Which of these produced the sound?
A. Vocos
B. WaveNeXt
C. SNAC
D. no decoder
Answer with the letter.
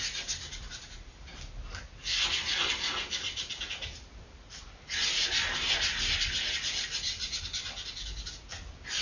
D